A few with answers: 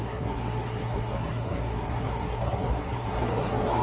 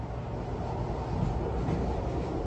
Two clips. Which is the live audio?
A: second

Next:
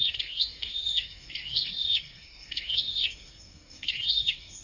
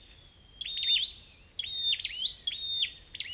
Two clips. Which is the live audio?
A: second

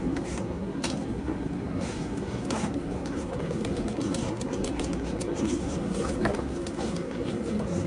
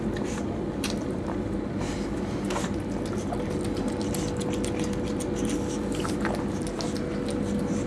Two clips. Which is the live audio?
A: second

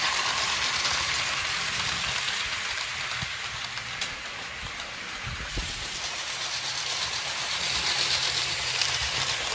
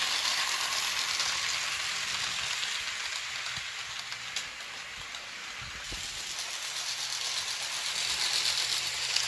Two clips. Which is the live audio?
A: second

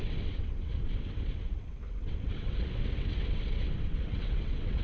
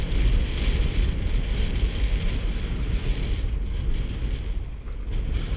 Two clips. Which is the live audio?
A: second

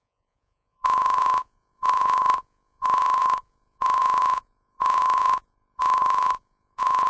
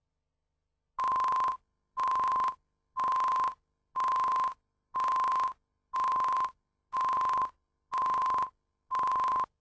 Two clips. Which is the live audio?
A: second